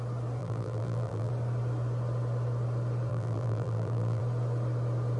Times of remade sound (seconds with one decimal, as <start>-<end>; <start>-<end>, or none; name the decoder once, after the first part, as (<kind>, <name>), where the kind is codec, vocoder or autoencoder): 0.4-1.3 (vocoder, BigVGAN v2); 3.1-4.2